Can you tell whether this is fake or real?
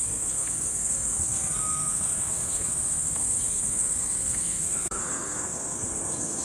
fake